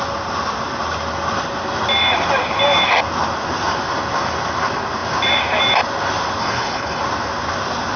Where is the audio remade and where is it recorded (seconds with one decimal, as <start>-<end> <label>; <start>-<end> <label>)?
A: 0.0-6.4 recorded; 6.4-7.0 remade; 7.0-8.0 recorded